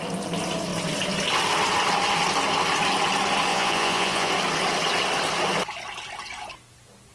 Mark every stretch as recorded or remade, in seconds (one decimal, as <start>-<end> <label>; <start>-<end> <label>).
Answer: 0.0-3.5 recorded; 3.5-4.3 remade; 4.3-7.1 recorded